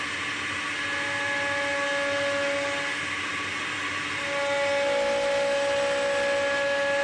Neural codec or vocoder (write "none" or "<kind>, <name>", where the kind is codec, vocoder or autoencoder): none